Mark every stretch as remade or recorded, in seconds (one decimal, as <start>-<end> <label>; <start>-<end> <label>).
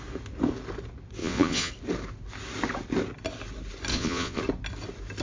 0.0-1.2 recorded; 1.2-1.7 remade; 1.7-3.9 recorded; 3.9-4.4 remade; 4.4-5.2 recorded